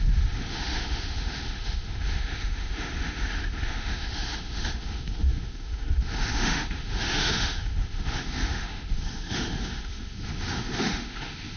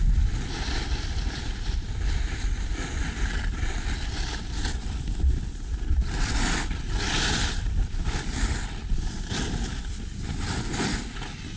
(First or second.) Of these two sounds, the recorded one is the second